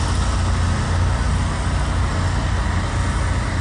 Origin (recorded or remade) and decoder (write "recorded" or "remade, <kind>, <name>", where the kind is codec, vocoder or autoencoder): recorded